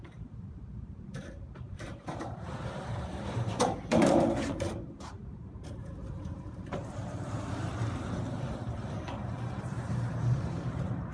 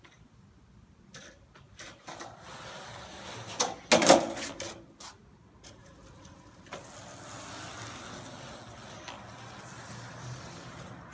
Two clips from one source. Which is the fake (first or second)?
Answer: first